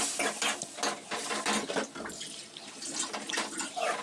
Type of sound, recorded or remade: recorded